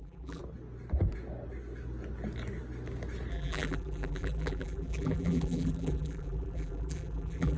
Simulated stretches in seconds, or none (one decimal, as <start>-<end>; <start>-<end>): 0.0-0.4; 3.3-7.6